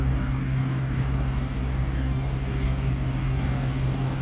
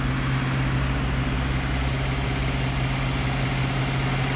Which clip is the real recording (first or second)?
second